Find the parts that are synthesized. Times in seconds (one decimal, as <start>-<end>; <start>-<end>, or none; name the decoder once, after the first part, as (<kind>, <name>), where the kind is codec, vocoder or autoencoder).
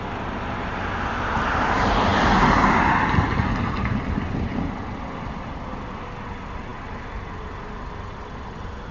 none